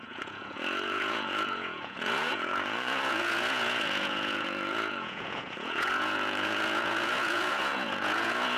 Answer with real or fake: fake